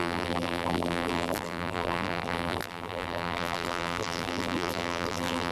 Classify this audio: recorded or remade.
remade